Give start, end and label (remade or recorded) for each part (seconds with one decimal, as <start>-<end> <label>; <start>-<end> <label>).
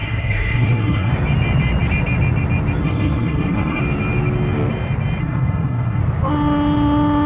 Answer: 0.0-1.1 remade; 1.1-2.8 recorded; 2.8-3.8 remade; 3.8-5.2 recorded; 5.2-6.0 remade; 6.0-7.3 recorded